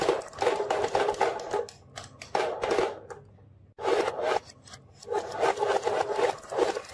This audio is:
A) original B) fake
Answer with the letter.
A